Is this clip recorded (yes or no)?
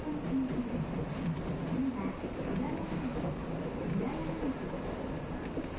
yes